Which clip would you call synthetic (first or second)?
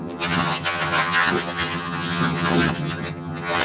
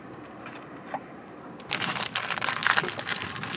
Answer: first